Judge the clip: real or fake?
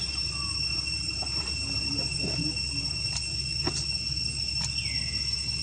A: real